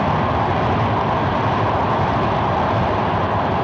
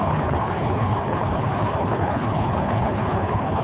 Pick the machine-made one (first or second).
second